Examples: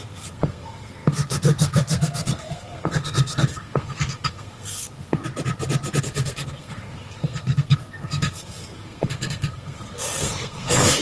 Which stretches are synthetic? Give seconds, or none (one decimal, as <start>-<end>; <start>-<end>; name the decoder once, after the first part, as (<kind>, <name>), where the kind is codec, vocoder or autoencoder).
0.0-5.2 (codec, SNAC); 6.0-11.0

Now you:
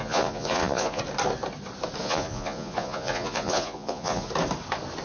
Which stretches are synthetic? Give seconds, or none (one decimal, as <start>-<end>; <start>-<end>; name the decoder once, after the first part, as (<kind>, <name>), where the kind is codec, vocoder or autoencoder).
0.0-1.0 (vocoder, Vocos); 2.0-4.3

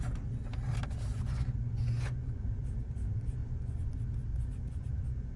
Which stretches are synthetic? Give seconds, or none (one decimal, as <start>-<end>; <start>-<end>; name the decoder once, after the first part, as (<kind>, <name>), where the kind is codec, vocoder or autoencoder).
1.1-2.6 (vocoder, Vocos); 3.4-3.9; 4.3-5.4

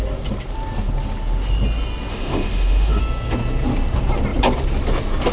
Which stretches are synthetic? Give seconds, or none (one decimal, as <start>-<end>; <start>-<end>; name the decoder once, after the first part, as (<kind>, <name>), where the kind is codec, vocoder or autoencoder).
2.1-3.0 (autoencoder, DAC-VAE)

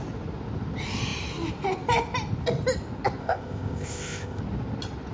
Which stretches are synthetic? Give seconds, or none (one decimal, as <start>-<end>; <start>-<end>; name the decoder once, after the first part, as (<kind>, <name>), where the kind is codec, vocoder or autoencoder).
3.2-4.4 (codec, ZipCodec)

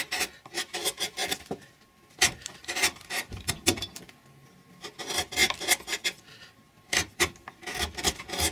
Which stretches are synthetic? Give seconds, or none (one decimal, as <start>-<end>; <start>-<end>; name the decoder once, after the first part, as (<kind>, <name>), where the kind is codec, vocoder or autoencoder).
none